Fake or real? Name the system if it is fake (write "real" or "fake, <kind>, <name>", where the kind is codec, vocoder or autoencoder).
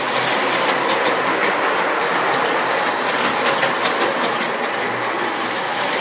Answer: real